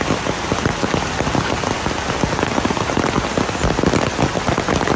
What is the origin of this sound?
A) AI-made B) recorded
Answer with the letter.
B